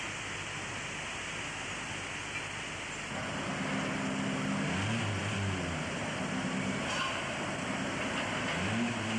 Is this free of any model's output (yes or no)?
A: yes